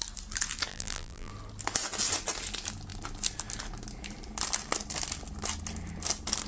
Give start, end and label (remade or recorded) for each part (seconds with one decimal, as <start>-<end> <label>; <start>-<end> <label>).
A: 0.0-0.7 recorded; 0.7-1.3 remade; 1.3-6.5 recorded